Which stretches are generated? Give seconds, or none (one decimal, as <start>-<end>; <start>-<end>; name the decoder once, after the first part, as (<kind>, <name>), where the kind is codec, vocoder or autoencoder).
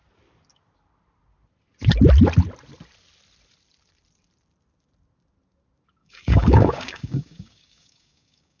6.0-8.6 (codec, DAC)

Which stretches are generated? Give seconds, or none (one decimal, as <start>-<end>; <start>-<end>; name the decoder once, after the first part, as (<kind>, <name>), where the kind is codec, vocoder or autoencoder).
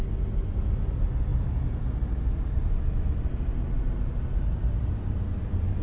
none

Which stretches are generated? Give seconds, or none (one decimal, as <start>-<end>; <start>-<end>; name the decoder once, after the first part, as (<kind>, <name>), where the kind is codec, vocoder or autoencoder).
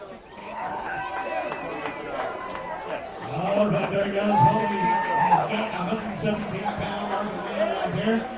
0.4-1.0 (codec, HILCodec); 3.1-4.2; 5.2-6.1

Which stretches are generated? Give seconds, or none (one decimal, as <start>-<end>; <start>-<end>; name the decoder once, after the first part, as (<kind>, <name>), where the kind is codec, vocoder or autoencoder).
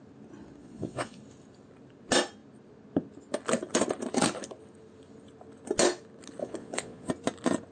0.6-1.2 (vocoder, Vocos); 6.4-7.1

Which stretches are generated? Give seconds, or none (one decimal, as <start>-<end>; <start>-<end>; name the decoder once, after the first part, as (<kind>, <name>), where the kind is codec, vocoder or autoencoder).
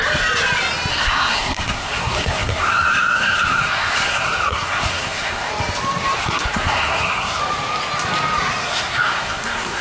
0.9-5.5 (codec, SNAC); 6.2-7.4; 8.7-9.8